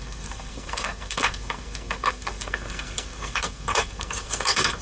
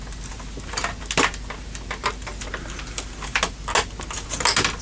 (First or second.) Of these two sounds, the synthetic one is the first